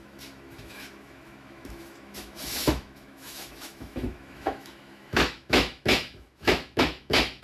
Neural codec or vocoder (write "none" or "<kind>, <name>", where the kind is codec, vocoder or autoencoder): autoencoder, DAC-VAE